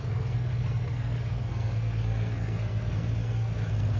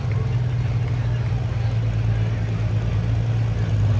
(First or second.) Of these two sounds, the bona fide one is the second